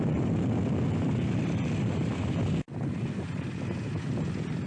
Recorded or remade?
recorded